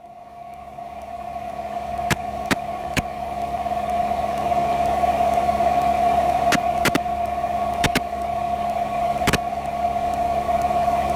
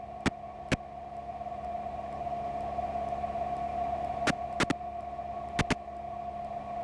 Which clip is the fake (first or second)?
first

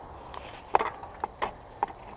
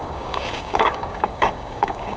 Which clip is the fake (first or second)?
second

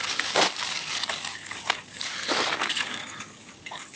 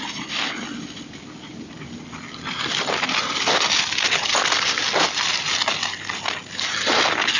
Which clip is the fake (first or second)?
first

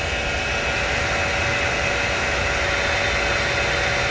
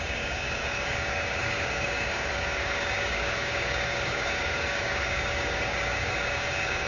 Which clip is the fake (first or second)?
second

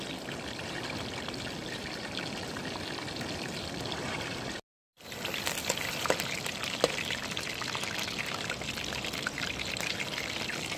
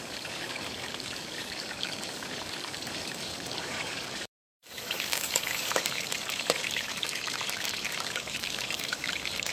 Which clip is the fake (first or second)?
second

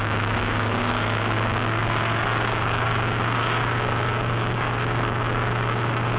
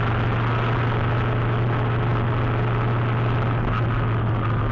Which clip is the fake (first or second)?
first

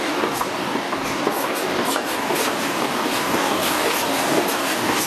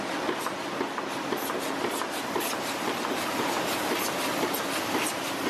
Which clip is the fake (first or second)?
first